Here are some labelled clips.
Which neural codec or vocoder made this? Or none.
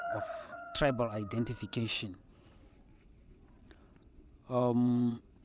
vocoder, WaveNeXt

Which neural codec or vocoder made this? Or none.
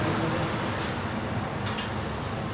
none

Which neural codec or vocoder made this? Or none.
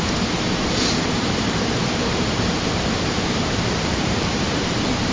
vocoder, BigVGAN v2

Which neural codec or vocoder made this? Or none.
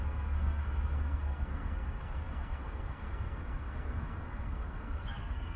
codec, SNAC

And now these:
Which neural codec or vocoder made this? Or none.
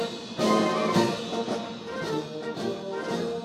none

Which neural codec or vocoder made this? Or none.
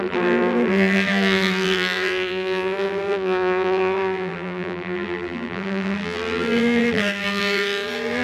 vocoder, BigVGAN v2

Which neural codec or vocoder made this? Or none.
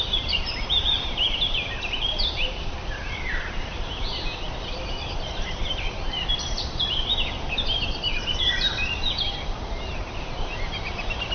vocoder, BigVGAN v2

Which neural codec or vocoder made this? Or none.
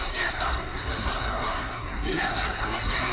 codec, SNAC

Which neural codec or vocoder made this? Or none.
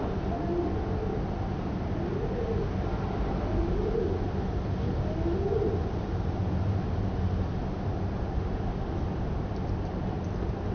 none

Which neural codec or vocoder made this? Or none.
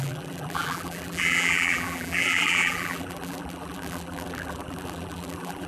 vocoder, BigVGAN v2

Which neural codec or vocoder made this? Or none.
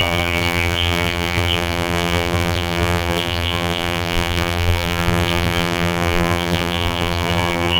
vocoder, BigVGAN v2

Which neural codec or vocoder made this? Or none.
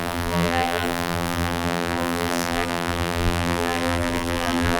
vocoder, BigVGAN v2